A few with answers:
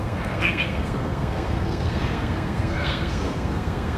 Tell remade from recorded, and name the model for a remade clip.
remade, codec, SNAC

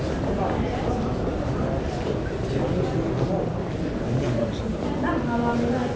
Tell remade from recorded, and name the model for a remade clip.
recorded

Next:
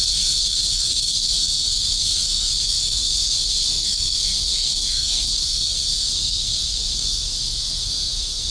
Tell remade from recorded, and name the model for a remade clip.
remade, codec, SNAC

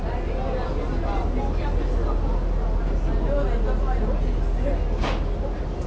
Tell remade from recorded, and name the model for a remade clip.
recorded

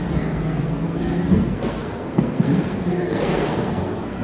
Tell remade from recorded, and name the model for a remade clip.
remade, codec, SNAC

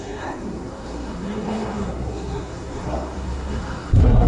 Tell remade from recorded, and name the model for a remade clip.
remade, codec, SNAC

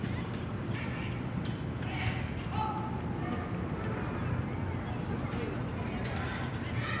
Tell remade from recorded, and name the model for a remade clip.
recorded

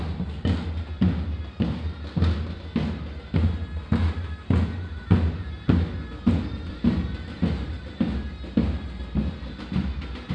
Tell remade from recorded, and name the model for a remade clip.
recorded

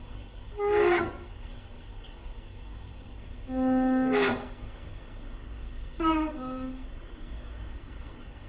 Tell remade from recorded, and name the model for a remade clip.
remade, codec, SNAC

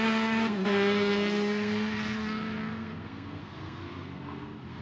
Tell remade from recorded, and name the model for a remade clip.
remade, codec, SNAC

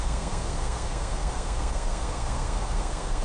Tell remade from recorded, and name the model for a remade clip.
remade, codec, SNAC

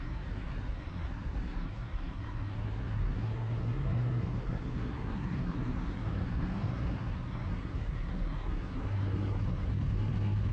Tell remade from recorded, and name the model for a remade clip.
remade, codec, SNAC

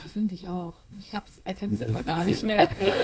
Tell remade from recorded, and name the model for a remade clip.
remade, codec, SNAC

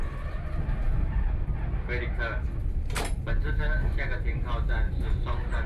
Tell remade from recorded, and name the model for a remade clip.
recorded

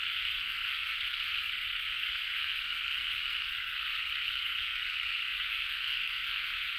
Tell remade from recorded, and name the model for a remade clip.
remade, codec, SNAC